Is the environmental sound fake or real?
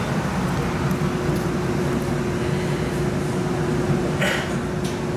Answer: real